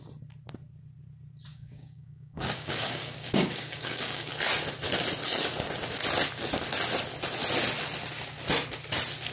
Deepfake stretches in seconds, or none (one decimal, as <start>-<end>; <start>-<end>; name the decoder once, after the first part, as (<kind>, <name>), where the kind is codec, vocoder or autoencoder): 1.5-4.3 (codec, DAC)